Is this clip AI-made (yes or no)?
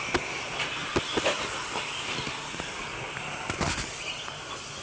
no